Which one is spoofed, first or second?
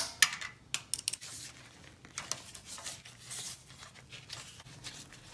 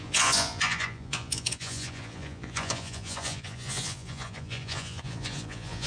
second